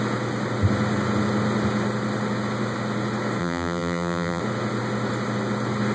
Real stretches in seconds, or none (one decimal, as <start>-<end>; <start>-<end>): 0.0-3.4; 4.4-5.9